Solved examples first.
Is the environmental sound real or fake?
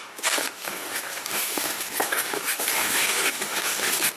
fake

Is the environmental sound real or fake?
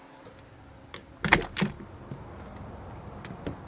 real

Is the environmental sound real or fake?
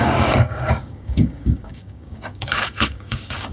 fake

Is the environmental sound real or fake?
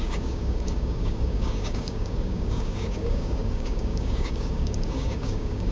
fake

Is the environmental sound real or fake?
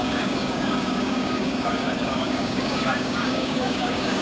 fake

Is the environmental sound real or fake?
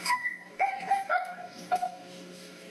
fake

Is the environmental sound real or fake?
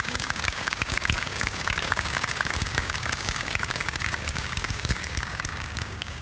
fake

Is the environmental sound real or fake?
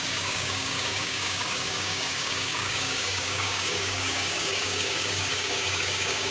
fake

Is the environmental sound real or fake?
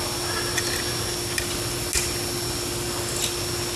real